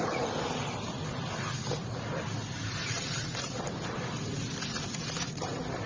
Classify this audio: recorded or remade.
recorded